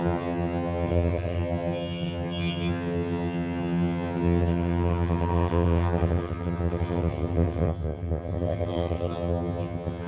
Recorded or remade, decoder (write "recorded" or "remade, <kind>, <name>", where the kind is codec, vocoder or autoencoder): remade, vocoder, HiFi-GAN